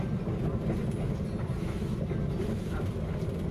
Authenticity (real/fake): real